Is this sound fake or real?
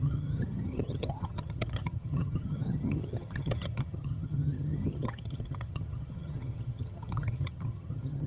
fake